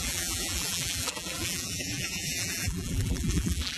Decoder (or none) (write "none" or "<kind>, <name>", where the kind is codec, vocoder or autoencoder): vocoder, BigVGAN v2